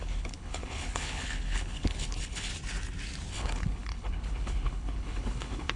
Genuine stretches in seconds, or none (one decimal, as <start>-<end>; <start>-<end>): 2.5-3.3